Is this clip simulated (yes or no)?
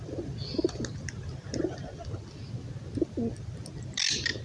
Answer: no